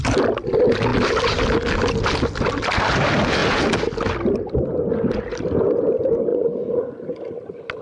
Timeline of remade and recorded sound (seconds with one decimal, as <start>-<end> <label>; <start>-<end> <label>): 0.0-6.3 recorded; 6.3-6.9 remade; 6.9-7.8 recorded